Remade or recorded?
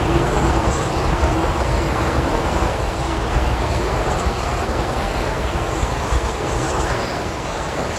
remade